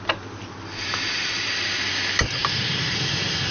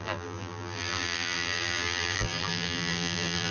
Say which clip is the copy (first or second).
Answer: second